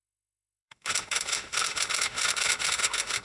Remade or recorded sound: remade